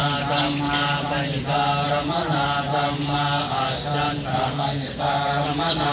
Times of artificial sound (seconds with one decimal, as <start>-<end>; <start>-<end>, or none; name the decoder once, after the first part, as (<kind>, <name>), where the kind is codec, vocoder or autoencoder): 4.3-5.0 (codec, SNAC)